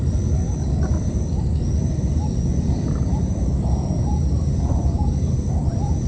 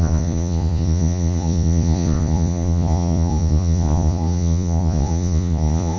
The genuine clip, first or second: first